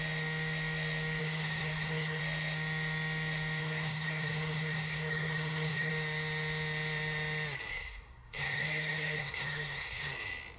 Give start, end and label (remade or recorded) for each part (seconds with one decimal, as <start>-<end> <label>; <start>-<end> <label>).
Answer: 0.0-1.2 recorded; 1.2-2.2 remade; 2.2-3.6 recorded; 3.6-5.9 remade; 5.9-7.7 recorded; 7.7-10.1 remade; 10.1-10.6 recorded